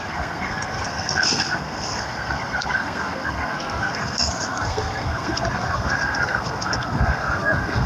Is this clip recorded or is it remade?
remade